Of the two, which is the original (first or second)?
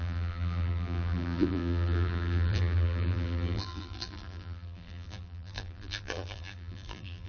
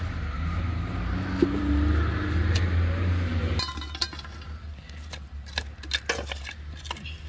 second